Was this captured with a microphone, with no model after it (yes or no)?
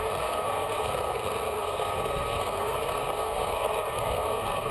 no